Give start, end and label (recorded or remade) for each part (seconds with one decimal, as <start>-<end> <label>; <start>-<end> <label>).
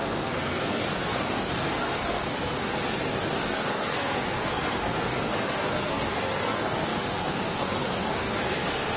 0.0-9.0 remade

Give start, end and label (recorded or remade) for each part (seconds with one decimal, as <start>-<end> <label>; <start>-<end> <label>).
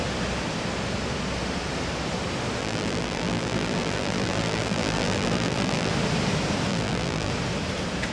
0.0-2.6 recorded; 2.6-5.9 remade; 5.9-6.7 recorded; 6.7-7.3 remade; 7.3-8.1 recorded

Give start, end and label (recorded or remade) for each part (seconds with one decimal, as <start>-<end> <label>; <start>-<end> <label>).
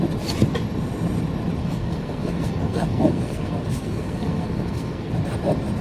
0.0-1.6 recorded; 1.6-5.1 remade; 5.1-5.8 recorded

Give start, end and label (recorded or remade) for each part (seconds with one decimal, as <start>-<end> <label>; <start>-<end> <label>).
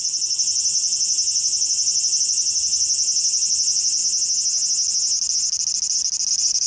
0.0-4.0 remade; 4.0-6.3 recorded; 6.3-6.7 remade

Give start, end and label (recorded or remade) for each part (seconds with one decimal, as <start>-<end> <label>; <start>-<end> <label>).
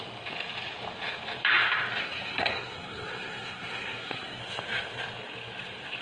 0.0-2.0 recorded; 2.0-4.4 remade; 4.4-6.0 recorded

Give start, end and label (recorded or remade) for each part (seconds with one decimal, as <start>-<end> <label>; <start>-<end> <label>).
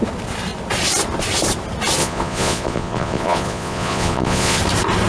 0.0-2.0 recorded; 2.0-4.6 remade; 4.6-5.1 recorded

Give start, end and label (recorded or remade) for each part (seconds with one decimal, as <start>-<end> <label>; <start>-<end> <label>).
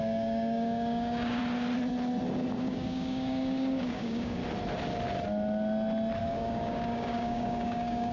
0.0-1.4 remade; 1.4-2.6 recorded; 2.6-4.4 remade; 4.4-6.2 recorded; 6.2-8.1 remade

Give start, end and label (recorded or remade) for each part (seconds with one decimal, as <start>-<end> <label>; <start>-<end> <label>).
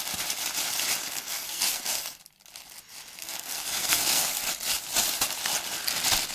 0.0-1.0 recorded; 1.0-2.2 remade; 2.2-3.2 recorded; 3.2-4.5 remade; 4.5-6.3 recorded